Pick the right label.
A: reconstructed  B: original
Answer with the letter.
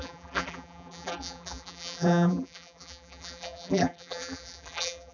A